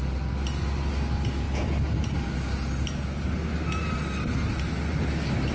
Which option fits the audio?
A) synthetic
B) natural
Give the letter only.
B